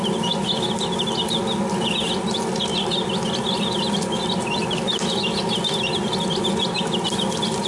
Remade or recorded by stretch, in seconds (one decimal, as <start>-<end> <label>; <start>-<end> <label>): 0.0-2.7 recorded; 2.7-5.3 remade; 5.3-7.7 recorded